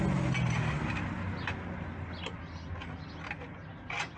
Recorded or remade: recorded